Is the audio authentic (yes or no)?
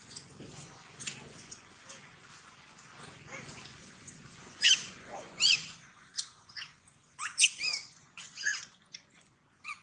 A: no